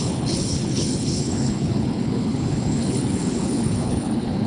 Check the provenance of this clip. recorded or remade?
remade